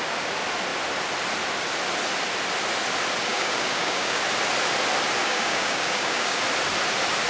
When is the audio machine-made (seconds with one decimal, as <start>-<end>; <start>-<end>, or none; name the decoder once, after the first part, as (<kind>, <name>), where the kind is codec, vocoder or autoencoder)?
3.3-4.2 (codec, DAC); 5.2-6.4

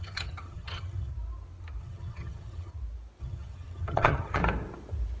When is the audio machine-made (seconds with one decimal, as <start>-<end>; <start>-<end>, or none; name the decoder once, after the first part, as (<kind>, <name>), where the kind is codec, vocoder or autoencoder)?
0.0-1.1 (vocoder, HiFi-GAN); 1.8-2.7; 3.2-4.4

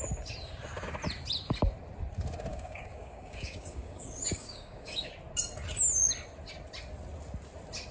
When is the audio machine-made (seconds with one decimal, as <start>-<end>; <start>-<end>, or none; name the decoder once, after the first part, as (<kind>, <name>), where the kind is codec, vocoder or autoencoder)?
2.5-5.1 (codec, DAC)